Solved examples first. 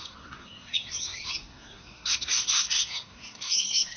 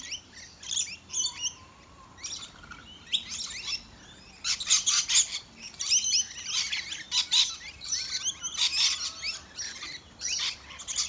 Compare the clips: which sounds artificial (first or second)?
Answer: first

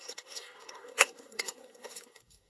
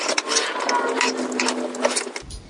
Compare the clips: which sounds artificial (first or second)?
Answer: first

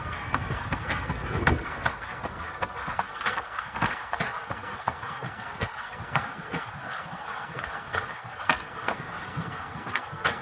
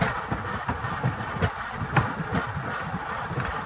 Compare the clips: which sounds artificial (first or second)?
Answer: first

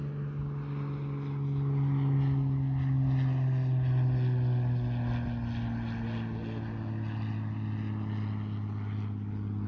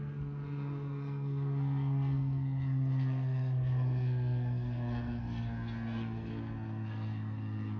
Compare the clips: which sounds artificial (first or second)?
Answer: second